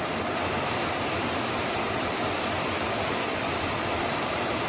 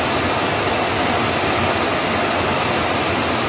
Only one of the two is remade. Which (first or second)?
first